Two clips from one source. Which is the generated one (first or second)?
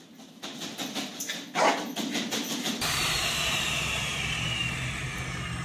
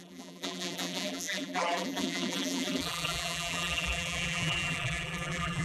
second